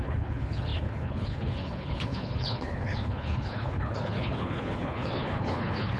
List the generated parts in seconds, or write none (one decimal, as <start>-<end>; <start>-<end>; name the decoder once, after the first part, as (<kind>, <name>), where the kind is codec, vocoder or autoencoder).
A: 0.0-6.0 (codec, HILCodec)